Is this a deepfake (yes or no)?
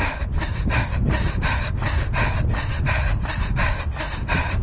no